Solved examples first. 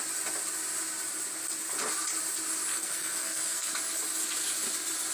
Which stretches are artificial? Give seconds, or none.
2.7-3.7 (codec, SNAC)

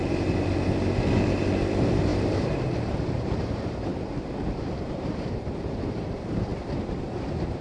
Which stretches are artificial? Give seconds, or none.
0.0-6.5 (vocoder, BigVGAN v2); 7.0-7.6